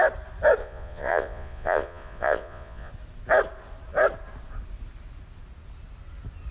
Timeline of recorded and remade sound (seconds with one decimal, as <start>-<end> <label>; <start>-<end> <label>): 0.0-0.6 recorded; 0.6-2.9 remade; 2.9-6.5 recorded